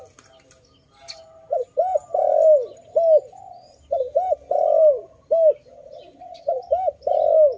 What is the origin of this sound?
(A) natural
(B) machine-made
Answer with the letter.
A